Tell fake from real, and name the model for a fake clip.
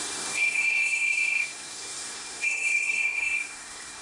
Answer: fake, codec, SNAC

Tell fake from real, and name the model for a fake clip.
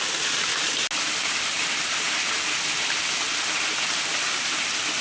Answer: real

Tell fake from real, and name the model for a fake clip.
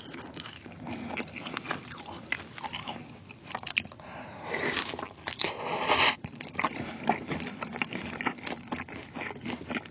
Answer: real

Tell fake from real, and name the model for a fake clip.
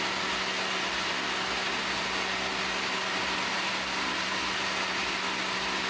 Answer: real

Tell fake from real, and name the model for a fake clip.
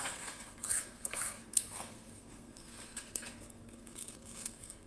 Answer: fake, codec, SNAC